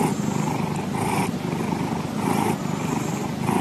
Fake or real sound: real